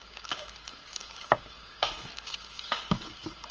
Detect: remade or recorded remade